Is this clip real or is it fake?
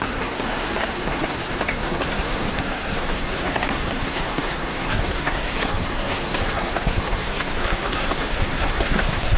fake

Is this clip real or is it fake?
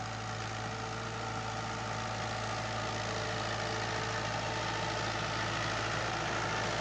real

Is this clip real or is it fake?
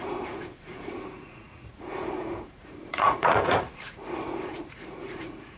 fake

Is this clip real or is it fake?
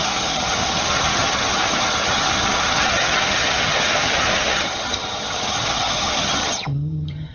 fake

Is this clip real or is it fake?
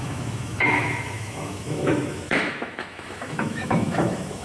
fake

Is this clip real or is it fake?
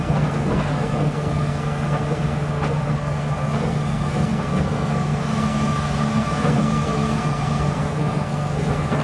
fake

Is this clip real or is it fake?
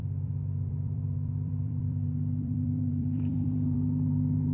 fake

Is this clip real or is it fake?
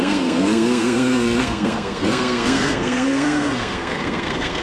fake